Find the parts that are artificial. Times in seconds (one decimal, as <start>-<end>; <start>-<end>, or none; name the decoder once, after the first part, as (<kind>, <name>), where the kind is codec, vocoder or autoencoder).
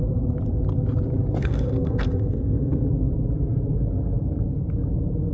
1.4-2.9 (codec, SNAC)